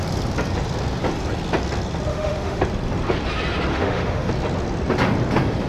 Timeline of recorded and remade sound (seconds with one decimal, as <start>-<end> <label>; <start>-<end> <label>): 0.0-2.1 recorded; 2.1-2.6 remade; 2.6-3.7 recorded; 3.7-4.3 remade; 4.3-5.7 recorded